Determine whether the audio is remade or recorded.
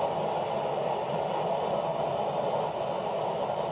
recorded